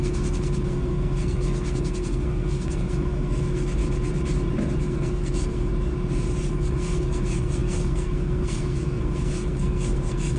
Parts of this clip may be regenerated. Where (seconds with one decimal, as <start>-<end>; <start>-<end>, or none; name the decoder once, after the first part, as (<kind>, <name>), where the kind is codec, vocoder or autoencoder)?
0.0-3.8 (codec, SNAC); 4.8-5.7; 6.5-10.4